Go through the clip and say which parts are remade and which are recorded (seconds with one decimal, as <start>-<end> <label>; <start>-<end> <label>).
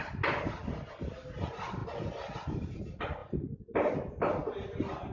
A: 0.0-5.1 recorded